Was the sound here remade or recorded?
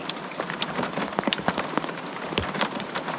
remade